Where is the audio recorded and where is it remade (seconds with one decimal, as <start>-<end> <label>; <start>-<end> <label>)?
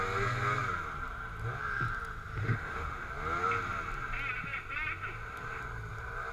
0.0-2.4 recorded; 2.4-3.1 remade; 3.1-6.3 recorded